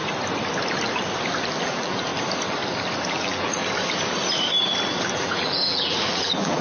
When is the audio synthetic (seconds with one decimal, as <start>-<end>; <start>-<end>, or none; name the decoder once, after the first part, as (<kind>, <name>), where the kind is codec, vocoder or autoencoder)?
1.6-2.1 (vocoder, BigVGAN v2); 3.1-3.6; 5.1-6.6